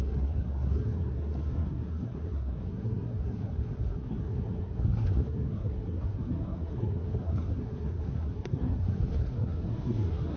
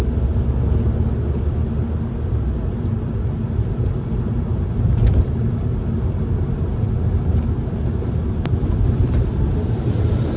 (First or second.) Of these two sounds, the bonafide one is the second